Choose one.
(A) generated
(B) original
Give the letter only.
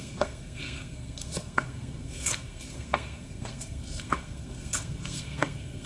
A